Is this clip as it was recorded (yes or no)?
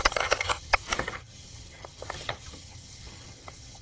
no